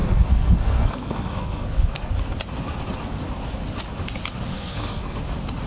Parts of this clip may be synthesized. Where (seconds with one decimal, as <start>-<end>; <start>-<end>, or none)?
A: 0.0-2.1; 4.5-5.2